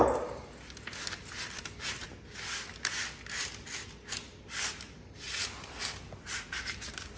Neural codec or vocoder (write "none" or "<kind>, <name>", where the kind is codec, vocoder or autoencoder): none